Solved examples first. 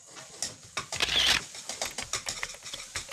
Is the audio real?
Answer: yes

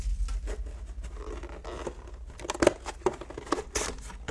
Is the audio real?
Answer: yes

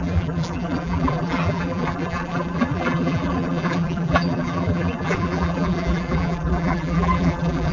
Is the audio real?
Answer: no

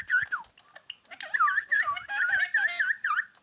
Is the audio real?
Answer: yes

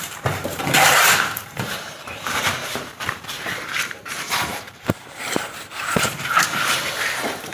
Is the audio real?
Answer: no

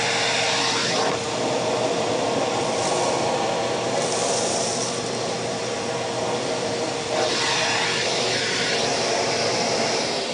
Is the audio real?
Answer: no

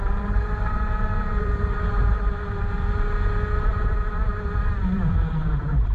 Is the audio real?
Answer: no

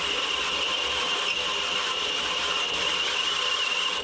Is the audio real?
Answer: yes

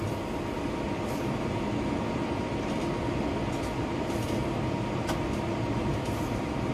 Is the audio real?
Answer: yes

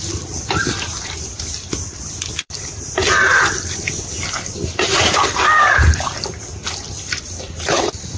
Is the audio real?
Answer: no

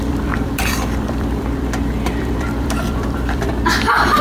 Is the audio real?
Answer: no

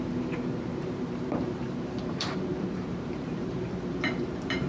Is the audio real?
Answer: no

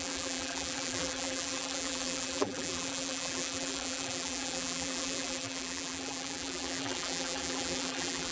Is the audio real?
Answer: no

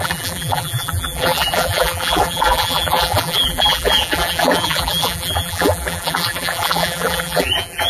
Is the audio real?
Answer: no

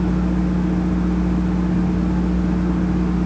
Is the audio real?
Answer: yes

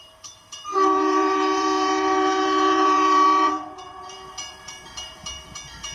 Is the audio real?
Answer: no